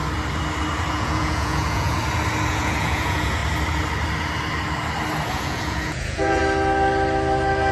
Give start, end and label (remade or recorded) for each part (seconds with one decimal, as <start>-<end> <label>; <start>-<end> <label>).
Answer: 0.0-0.9 recorded; 0.9-2.0 remade; 2.0-2.5 recorded; 2.5-3.4 remade; 3.4-5.3 recorded; 5.3-6.4 remade; 6.4-7.7 recorded